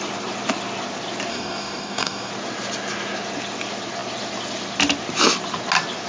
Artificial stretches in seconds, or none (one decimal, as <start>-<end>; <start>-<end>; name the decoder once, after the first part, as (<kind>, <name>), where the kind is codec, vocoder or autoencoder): 1.3-2.3 (codec, DAC)